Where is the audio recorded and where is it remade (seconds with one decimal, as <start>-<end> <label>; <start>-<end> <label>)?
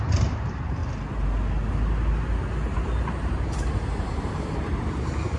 0.0-0.8 remade; 0.8-3.2 recorded; 3.2-5.4 remade